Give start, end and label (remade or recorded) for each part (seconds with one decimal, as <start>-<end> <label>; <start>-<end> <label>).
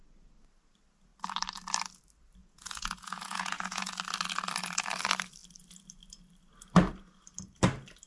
0.0-2.4 recorded; 2.4-3.9 remade; 3.9-8.1 recorded